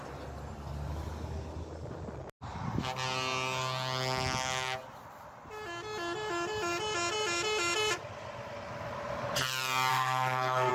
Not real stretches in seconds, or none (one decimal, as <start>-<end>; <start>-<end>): 9.9-10.7